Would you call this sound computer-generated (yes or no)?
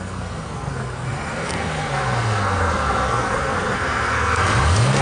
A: yes